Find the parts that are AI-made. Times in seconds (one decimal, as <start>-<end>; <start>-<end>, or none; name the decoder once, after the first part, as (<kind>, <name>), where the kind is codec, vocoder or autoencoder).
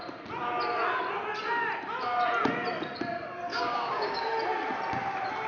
3.5-4.3 (codec, DAC)